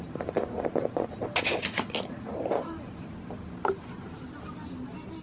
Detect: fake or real real